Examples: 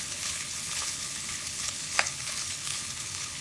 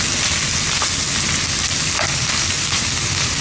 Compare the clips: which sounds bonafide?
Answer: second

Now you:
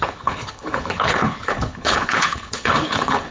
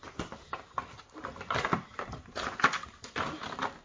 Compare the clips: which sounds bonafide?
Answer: second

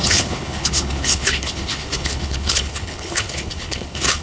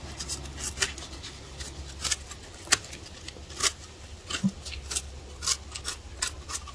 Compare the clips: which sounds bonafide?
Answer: second